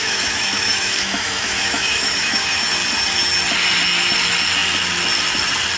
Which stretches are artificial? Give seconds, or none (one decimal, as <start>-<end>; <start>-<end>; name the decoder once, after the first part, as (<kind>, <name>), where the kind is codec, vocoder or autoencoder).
0.0-2.7 (autoencoder, DAC-VAE)